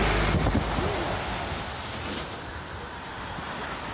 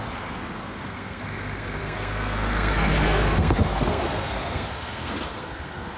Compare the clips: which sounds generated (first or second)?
second